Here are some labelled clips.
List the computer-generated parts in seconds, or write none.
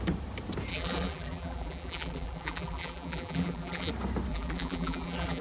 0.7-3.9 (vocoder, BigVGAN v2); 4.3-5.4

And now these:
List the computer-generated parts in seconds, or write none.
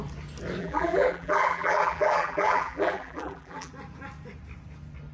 0.6-3.7 (vocoder, BigVGAN v2)